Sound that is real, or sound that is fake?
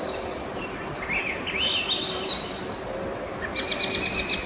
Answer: real